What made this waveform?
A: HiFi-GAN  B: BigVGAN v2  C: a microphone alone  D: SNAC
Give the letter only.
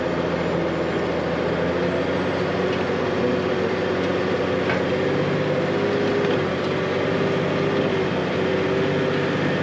C